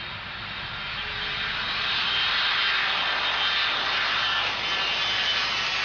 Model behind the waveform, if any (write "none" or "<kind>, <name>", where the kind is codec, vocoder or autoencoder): none